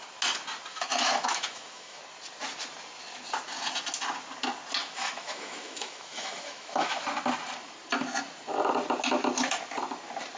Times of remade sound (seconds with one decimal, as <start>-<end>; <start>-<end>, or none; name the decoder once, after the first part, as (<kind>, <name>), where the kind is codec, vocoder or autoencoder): 0.7-2.0 (autoencoder, DAC-VAE); 4.8-7.0